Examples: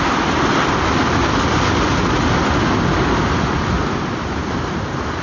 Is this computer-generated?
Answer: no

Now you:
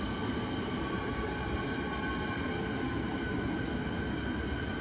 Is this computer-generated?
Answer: no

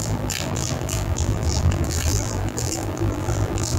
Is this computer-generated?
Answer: yes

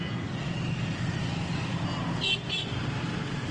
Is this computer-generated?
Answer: no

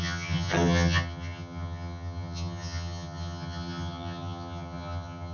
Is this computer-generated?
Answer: yes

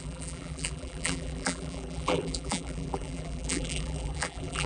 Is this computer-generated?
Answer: yes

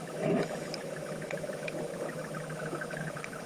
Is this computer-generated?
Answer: yes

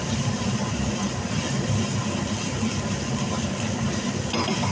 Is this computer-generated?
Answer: no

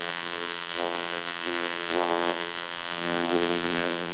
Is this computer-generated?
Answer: yes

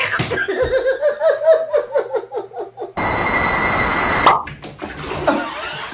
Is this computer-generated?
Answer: no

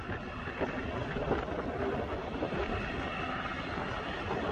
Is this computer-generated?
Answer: no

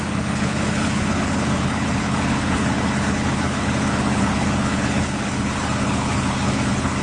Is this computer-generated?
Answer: yes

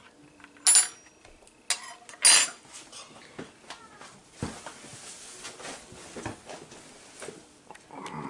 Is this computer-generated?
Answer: no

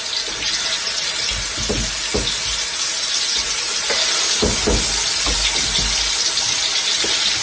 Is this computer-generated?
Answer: no